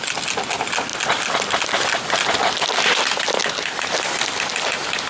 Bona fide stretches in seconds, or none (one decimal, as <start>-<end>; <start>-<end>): 0.0-5.1

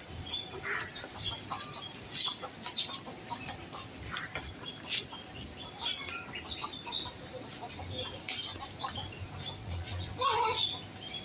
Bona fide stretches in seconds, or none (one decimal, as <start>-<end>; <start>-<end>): 0.0-9.6; 10.1-11.2

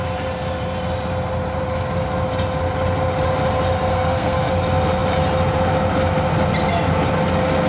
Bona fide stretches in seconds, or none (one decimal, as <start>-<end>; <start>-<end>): 0.0-3.9; 4.5-7.7